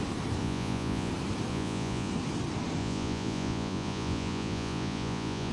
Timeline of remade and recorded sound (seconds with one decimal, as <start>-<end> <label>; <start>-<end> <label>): 0.0-0.4 recorded; 0.4-1.1 remade; 1.1-1.5 recorded; 1.5-2.1 remade; 2.1-2.8 recorded; 2.8-5.5 remade